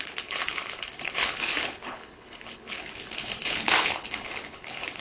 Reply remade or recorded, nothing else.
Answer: remade